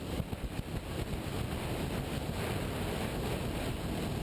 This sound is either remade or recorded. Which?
recorded